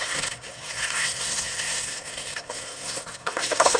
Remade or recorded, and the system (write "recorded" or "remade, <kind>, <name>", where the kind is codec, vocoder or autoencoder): remade, codec, SNAC